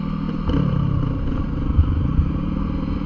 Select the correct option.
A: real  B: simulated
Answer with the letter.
A